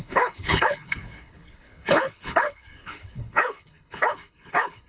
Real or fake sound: fake